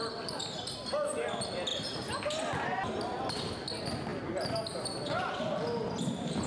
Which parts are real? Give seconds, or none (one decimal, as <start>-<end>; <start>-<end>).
0.6-1.7; 2.4-6.5